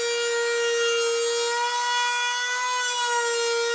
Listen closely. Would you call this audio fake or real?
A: real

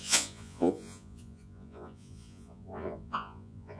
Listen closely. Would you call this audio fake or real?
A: fake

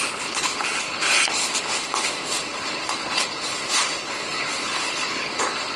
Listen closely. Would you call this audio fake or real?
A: fake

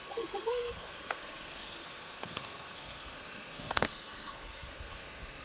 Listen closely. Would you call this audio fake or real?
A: fake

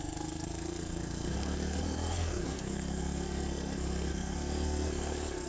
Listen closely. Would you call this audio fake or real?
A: fake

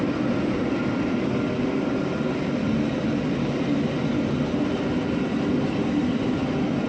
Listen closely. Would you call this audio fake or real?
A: real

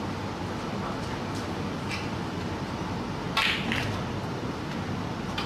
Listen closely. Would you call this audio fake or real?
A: real